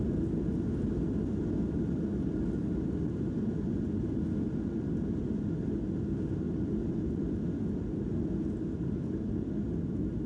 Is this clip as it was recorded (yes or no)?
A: yes